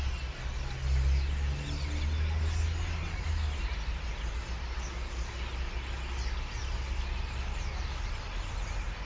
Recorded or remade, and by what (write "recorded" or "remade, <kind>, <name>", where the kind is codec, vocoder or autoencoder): recorded